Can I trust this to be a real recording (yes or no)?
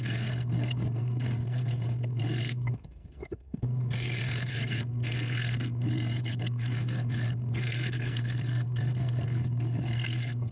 no